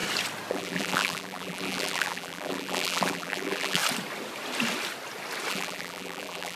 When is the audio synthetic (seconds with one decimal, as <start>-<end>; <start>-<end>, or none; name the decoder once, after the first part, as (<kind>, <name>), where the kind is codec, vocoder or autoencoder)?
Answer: 0.5-3.8 (vocoder, BigVGAN v2); 5.5-6.6